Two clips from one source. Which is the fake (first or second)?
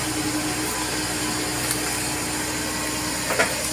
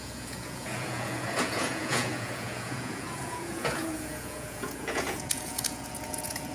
second